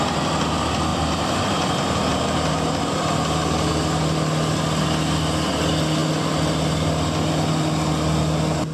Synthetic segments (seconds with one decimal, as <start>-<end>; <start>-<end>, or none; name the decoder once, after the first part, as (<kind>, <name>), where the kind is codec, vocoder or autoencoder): 0.9-2.5 (vocoder, BigVGAN v2)